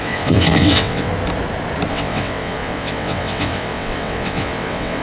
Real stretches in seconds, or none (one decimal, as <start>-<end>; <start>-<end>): 1.1-1.9